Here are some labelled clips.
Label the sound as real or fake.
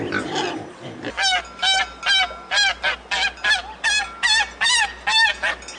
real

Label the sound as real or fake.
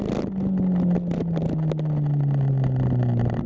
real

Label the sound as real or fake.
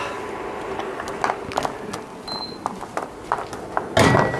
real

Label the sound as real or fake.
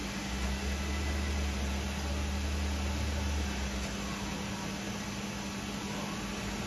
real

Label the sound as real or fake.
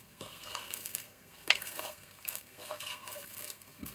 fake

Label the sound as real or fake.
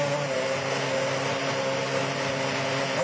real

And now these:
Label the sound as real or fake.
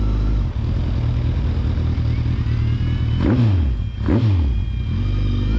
real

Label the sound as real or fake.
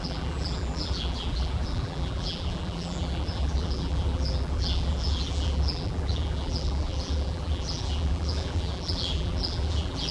fake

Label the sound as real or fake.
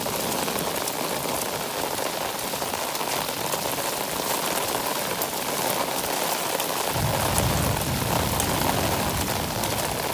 real